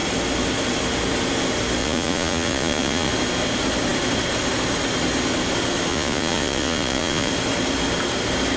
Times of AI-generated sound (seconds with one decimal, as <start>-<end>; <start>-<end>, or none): 1.8-3.1; 5.9-7.3